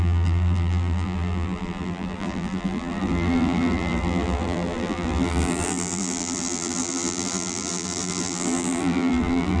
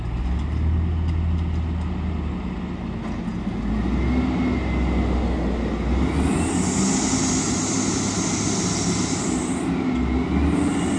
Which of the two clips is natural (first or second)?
second